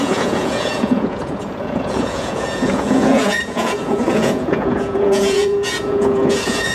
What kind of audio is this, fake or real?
fake